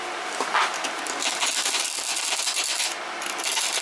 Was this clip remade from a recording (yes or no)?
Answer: no